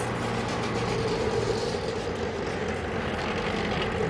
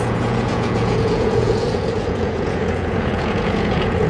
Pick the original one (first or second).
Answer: first